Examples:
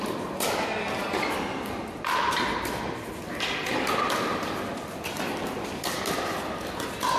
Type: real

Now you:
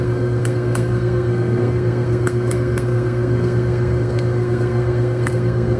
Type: fake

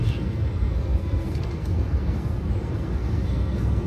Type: fake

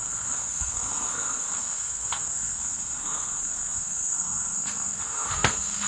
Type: fake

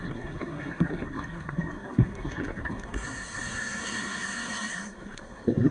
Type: fake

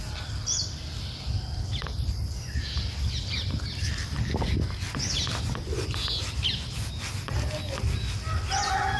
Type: real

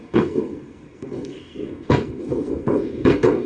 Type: fake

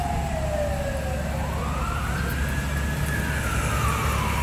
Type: real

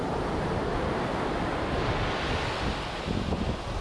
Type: real